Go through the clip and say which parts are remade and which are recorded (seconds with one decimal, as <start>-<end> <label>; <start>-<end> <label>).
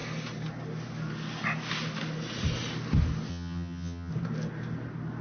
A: 0.0-3.3 recorded; 3.3-4.1 remade; 4.1-5.2 recorded